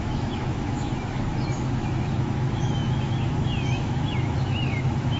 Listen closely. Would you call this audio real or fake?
fake